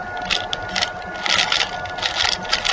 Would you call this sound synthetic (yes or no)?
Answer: no